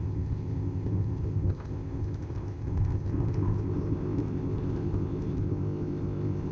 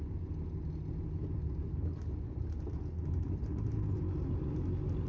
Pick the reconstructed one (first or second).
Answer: first